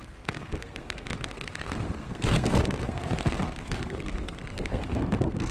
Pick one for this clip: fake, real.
fake